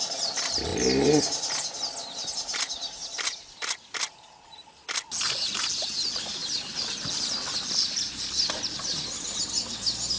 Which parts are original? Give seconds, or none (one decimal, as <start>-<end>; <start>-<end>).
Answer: 0.0-10.2